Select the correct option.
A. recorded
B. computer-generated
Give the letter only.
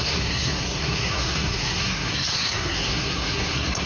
B